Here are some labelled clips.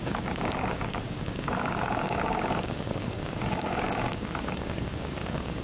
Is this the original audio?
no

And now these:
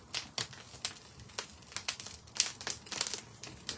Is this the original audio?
yes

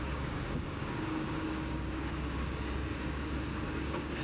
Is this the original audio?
no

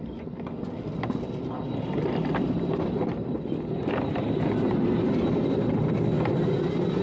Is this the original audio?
yes